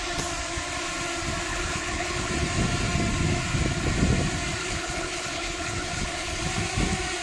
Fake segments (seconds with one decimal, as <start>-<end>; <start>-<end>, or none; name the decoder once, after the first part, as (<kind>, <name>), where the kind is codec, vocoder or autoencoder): 1.5-2.3 (codec, HILCodec); 4.6-6.4